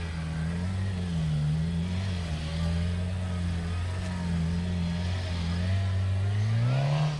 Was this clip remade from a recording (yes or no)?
no